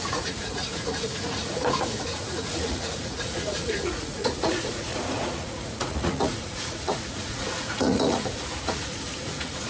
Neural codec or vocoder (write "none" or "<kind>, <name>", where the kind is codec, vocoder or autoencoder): vocoder, Vocos